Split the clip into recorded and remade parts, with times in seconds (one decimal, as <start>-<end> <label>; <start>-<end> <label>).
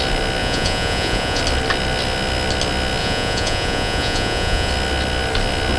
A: 0.0-0.4 recorded; 0.4-1.4 remade; 1.4-3.0 recorded; 3.0-4.7 remade; 4.7-5.8 recorded